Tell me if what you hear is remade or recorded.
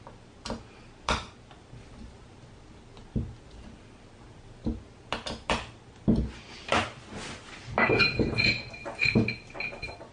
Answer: recorded